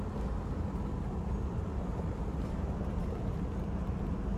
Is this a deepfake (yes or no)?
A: no